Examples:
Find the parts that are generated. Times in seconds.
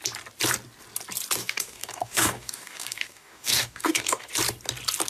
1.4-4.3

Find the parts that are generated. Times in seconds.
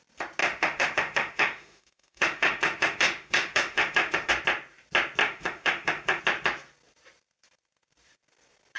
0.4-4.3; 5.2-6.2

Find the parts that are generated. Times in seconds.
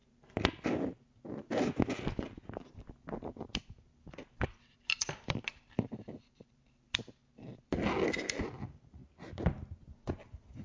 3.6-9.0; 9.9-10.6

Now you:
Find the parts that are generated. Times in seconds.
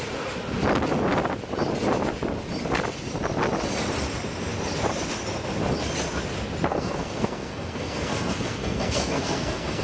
6.7-9.8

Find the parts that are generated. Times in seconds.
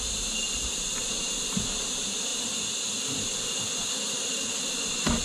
2.3-4.6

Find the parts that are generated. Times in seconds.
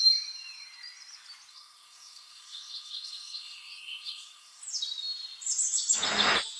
1.5-4.6